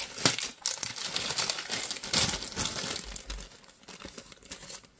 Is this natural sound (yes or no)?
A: yes